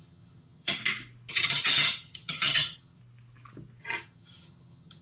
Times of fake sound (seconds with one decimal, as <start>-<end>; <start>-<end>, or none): 0.0-0.8; 1.3-3.0; 3.8-5.0